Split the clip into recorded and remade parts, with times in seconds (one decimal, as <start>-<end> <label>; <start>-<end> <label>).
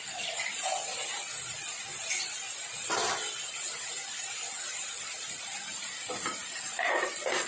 0.0-7.5 recorded